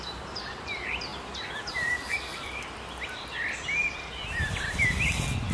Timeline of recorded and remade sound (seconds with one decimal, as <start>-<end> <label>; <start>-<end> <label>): 0.0-1.1 remade; 1.1-1.7 recorded; 1.7-2.3 remade; 2.3-5.5 recorded